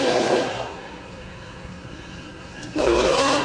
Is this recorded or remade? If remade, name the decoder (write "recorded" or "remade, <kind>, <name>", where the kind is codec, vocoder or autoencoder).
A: remade, codec, SNAC